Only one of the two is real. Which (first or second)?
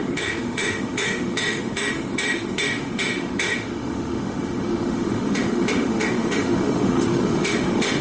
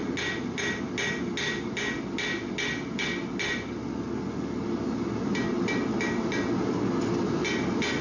second